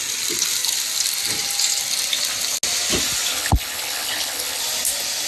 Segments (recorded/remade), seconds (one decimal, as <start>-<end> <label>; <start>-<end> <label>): 0.0-3.3 recorded; 3.3-4.6 remade; 4.6-5.3 recorded